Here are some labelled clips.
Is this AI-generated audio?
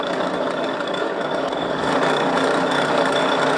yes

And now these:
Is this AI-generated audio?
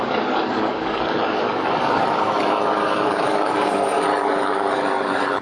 yes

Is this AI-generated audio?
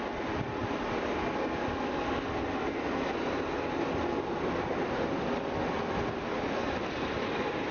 no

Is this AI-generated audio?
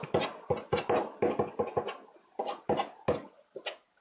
no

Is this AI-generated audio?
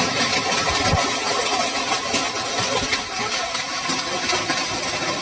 no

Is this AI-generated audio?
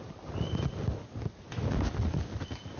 no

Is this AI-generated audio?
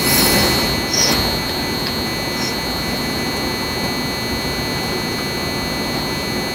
no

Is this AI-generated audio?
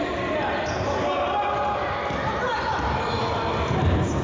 no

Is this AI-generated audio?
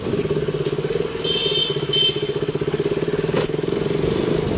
no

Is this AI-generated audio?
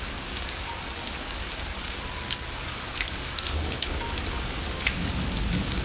yes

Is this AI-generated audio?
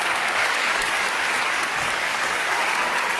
yes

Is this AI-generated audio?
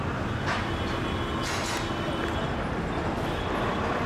no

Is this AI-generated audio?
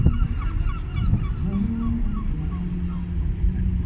no